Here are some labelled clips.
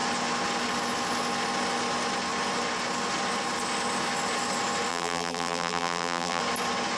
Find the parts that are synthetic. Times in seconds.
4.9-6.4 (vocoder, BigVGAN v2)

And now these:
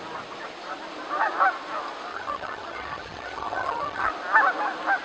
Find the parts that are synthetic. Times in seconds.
2.1-4.1 (vocoder, HiFi-GAN)

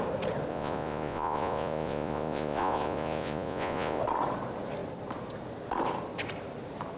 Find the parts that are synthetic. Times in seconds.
0.5-4.0 (vocoder, Vocos)

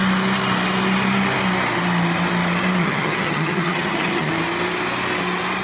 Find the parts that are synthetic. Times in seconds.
2.8-4.3 (vocoder, HiFi-GAN)

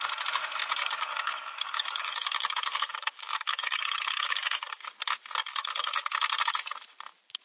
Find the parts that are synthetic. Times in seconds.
0.8-4.8 (codec, DAC); 5.4-6.0

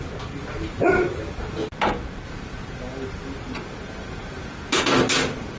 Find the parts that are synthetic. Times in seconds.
4.0-4.6 (vocoder, Vocos)

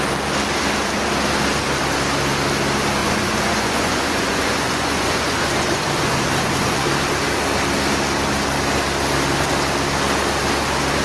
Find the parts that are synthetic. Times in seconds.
3.0-6.9 (vocoder, Vocos)